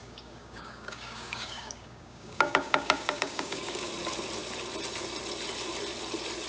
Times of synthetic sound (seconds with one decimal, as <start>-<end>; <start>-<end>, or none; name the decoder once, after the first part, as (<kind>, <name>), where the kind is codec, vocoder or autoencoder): 0.0-3.9 (codec, DAC)